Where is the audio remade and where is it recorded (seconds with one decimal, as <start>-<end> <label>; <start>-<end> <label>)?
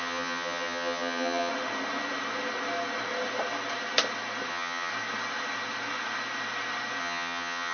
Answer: 0.0-1.5 remade; 1.5-4.5 recorded; 4.5-4.9 remade; 4.9-7.0 recorded; 7.0-7.7 remade